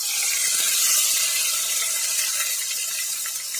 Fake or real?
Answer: real